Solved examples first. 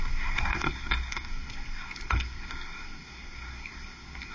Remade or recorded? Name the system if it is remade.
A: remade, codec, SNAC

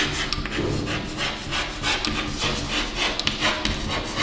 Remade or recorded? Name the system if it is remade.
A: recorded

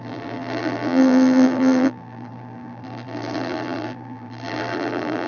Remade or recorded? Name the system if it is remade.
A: remade, vocoder, BigVGAN v2